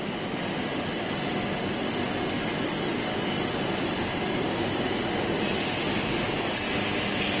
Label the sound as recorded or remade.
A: recorded